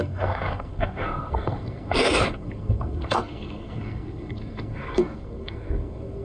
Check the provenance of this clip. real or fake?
fake